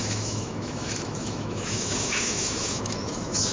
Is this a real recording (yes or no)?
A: no